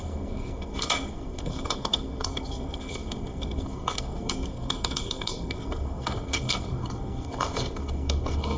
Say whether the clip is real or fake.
fake